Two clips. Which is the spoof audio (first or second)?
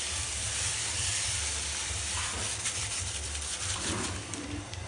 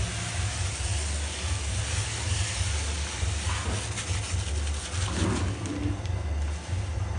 first